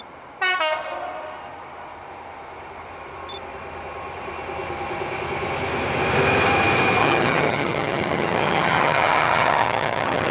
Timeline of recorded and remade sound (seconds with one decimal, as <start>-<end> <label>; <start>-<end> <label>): 0.0-7.0 recorded; 7.0-10.3 remade